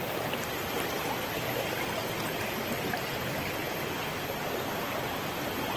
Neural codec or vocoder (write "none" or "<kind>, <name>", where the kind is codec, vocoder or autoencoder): none